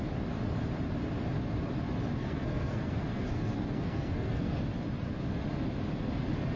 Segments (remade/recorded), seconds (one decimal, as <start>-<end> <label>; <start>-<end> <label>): 0.0-2.2 recorded; 2.2-4.6 remade; 4.6-6.6 recorded

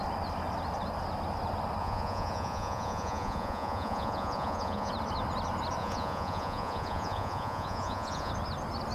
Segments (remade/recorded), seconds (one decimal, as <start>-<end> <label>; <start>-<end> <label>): 0.0-1.8 recorded; 1.8-4.9 remade; 4.9-5.8 recorded; 5.8-8.3 remade; 8.3-8.9 recorded

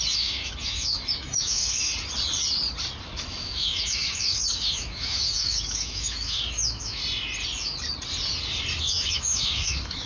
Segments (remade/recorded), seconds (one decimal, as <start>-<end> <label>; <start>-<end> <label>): 0.0-1.9 remade; 1.9-3.0 recorded; 3.0-7.0 remade; 7.0-8.8 recorded; 8.8-10.1 remade

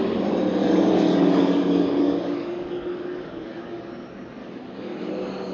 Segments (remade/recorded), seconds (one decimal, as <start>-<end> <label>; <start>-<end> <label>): 0.0-0.6 recorded; 0.6-3.9 remade; 3.9-4.4 recorded; 4.4-5.1 remade; 5.1-5.5 recorded